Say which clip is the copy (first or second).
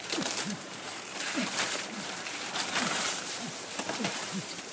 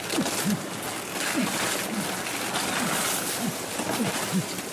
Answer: first